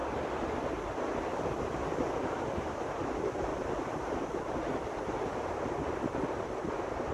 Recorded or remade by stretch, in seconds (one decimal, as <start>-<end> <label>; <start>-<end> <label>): 0.0-1.0 recorded; 1.0-3.5 remade; 3.5-4.7 recorded; 4.7-7.1 remade